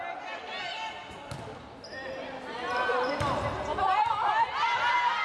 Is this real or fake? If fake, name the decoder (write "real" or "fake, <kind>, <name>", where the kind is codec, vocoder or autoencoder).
real